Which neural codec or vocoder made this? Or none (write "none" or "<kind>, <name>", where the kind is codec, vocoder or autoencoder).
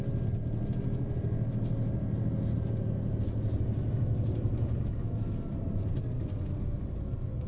none